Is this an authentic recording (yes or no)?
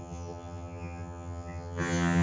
no